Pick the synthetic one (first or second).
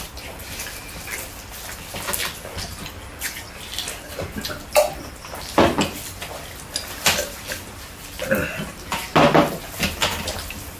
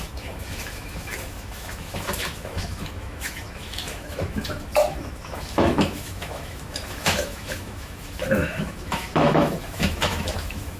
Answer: second